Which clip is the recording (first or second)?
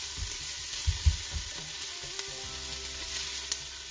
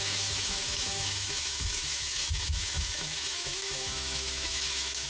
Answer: first